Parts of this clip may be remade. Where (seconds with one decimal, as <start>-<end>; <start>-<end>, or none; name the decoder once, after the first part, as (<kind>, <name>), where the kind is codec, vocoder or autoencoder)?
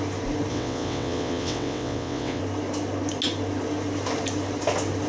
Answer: 0.5-2.4 (vocoder, WaveNeXt)